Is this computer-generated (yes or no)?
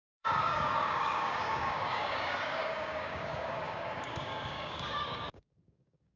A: yes